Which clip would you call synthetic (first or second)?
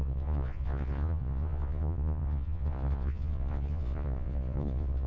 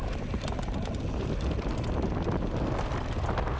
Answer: first